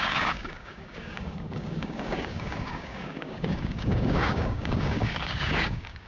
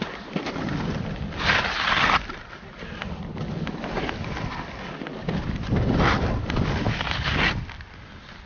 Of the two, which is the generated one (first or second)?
first